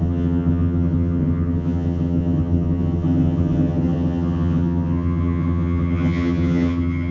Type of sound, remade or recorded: remade